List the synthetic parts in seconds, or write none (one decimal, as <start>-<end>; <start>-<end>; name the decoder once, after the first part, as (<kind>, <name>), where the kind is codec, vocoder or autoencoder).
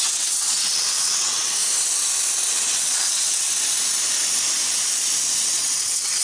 0.0-1.6 (vocoder, WaveNeXt); 2.5-3.5; 5.5-6.2